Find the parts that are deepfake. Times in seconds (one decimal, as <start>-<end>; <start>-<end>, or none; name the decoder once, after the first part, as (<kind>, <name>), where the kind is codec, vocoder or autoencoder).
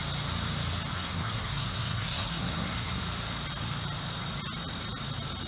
0.9-3.0 (codec, SNAC)